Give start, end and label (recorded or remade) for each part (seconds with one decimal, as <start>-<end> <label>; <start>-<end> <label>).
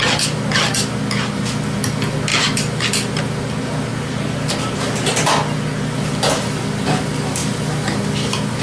0.0-8.6 recorded